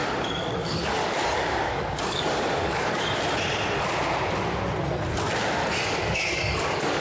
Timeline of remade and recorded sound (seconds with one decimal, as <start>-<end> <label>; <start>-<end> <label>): 0.0-3.2 remade; 3.2-5.6 recorded; 5.6-7.0 remade

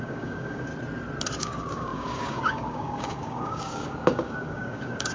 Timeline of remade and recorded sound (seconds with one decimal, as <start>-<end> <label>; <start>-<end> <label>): 0.0-0.7 remade; 0.7-1.4 recorded; 1.4-5.1 remade

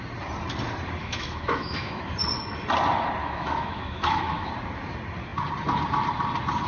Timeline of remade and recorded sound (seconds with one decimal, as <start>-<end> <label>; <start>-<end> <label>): 0.0-1.0 recorded; 1.0-2.0 remade; 2.0-3.2 recorded; 3.2-4.5 remade; 4.5-6.7 recorded

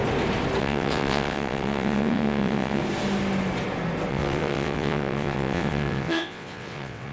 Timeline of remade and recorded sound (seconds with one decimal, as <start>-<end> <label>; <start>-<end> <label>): 0.0-0.6 recorded; 0.6-2.8 remade; 2.8-4.1 recorded; 4.1-7.1 remade

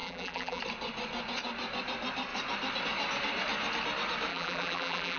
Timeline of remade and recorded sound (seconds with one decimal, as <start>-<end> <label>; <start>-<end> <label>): 0.0-0.6 remade; 0.6-4.3 recorded; 4.3-5.2 remade

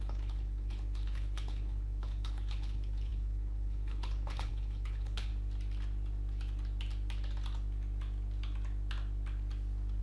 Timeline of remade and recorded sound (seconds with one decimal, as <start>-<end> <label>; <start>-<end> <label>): 0.0-5.3 remade; 5.3-10.0 recorded

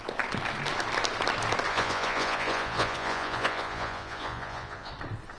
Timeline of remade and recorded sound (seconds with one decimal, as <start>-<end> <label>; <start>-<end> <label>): 0.0-1.7 recorded; 1.7-4.9 remade; 4.9-5.4 recorded